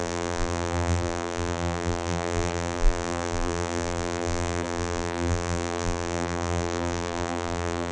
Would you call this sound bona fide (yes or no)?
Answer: no